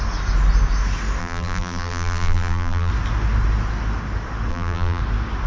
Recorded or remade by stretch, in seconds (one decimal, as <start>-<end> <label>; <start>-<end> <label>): 0.0-1.2 recorded; 1.2-2.9 remade; 2.9-4.5 recorded; 4.5-5.0 remade; 5.0-5.5 recorded